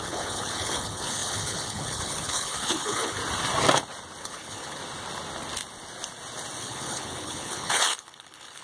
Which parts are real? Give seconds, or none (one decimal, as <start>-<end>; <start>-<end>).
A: 3.2-4.2; 4.8-6.6